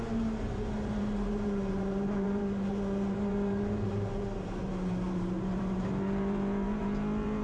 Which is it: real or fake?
fake